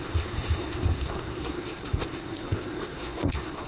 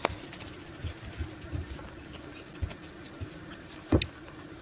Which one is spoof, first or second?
first